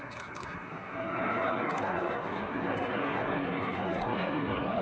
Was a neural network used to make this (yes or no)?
yes